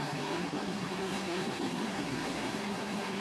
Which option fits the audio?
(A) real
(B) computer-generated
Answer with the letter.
B